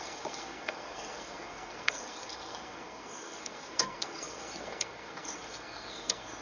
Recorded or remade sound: remade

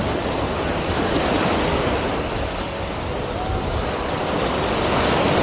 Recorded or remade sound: recorded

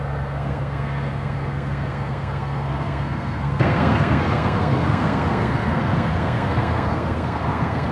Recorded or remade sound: remade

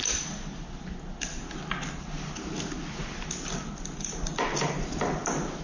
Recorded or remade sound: recorded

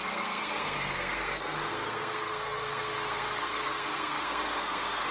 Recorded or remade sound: remade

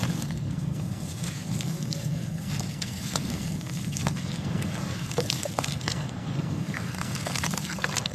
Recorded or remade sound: remade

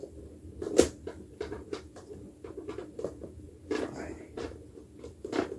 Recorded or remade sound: recorded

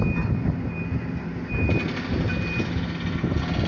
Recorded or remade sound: recorded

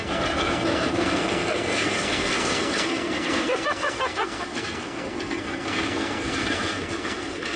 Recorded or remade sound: remade